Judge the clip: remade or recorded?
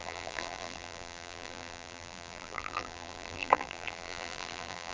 remade